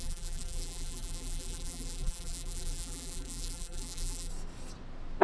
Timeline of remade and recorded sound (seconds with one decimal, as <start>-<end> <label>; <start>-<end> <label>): 0.0-4.3 remade; 4.3-5.2 recorded